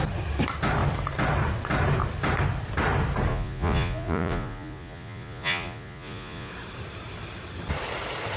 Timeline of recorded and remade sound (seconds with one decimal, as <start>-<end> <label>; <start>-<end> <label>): 0.0-3.3 recorded; 3.3-6.5 remade; 6.5-8.4 recorded